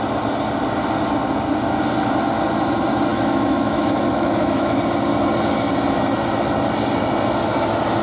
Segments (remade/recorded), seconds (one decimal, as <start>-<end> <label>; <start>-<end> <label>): 0.0-3.1 recorded; 3.1-4.8 remade; 4.8-8.0 recorded